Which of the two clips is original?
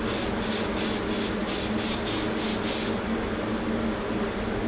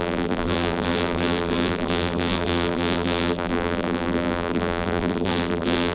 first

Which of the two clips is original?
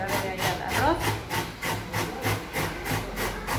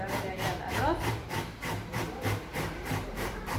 first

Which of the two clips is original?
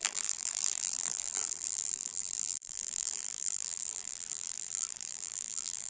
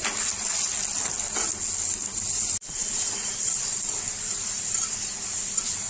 second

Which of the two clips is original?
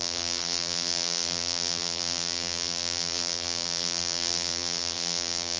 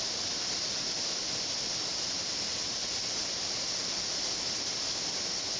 second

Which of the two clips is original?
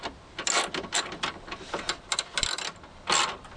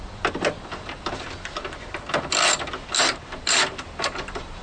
first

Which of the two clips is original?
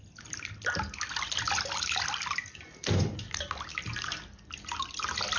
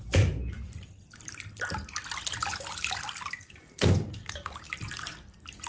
first